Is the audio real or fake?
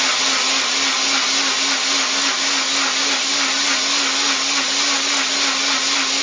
real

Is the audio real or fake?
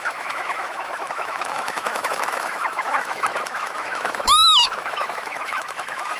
fake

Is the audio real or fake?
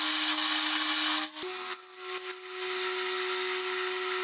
real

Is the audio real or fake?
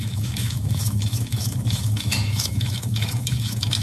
fake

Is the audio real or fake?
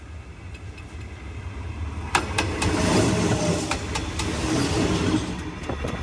real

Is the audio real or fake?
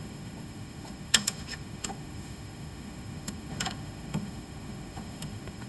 fake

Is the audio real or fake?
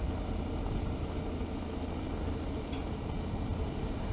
real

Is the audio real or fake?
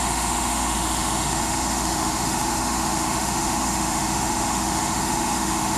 fake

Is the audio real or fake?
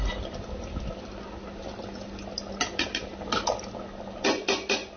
real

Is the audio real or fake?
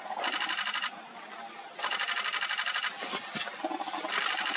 real